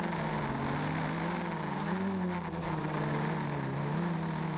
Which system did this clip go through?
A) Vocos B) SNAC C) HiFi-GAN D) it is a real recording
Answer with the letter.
D